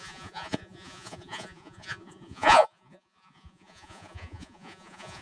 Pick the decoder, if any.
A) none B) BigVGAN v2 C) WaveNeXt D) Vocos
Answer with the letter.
D